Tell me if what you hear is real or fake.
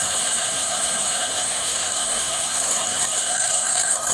fake